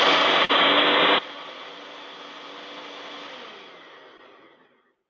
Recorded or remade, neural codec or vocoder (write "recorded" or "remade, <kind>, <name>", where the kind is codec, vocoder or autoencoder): recorded